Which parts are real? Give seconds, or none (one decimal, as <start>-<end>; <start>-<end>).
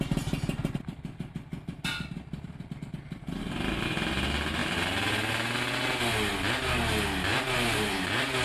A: 0.0-7.3; 8.0-8.4